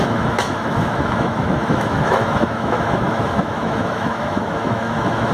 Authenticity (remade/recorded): remade